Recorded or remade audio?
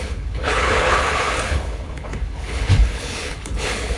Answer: remade